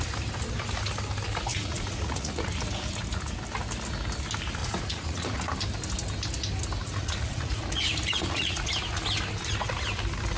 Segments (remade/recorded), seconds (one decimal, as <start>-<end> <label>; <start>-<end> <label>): 0.0-1.5 recorded; 1.5-2.5 remade; 2.5-4.6 recorded; 4.6-5.5 remade; 5.5-6.8 recorded; 6.8-8.7 remade; 8.7-10.4 recorded